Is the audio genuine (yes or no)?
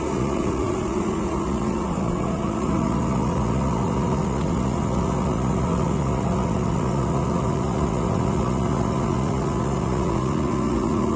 no